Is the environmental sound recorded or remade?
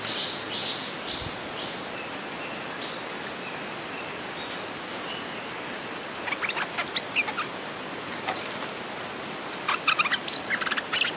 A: recorded